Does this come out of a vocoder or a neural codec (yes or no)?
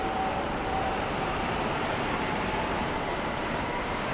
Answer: yes